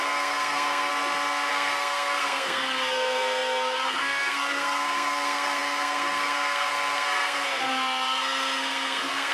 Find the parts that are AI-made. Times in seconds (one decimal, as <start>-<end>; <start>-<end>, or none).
0.0-0.9; 1.5-9.3